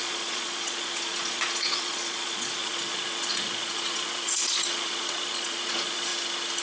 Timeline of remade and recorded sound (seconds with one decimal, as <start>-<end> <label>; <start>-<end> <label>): 0.0-6.1 remade; 6.1-6.6 recorded